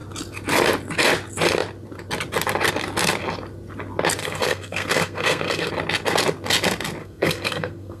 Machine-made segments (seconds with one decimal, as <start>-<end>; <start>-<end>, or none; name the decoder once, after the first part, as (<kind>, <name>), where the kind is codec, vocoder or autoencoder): 4.2-5.7 (codec, SNAC); 7.0-8.0